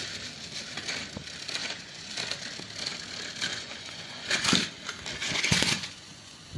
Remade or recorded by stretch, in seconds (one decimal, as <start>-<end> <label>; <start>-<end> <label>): 0.0-1.6 recorded; 1.6-2.1 remade; 2.1-3.5 recorded; 3.5-4.5 remade; 4.5-5.2 recorded; 5.2-6.6 remade

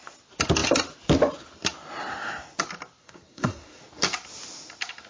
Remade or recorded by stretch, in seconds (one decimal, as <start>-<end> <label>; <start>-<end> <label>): 0.0-3.0 recorded; 3.0-3.8 remade; 3.8-5.1 recorded

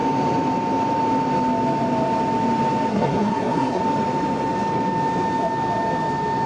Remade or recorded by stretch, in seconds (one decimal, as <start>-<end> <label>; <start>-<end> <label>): 0.0-2.9 recorded; 2.9-3.8 remade; 3.8-6.5 recorded